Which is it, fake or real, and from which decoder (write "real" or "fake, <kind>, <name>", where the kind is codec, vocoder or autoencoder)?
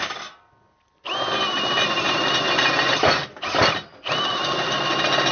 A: real